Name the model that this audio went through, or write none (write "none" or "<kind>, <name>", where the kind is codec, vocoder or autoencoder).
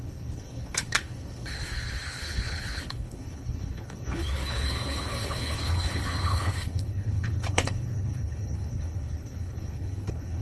codec, HILCodec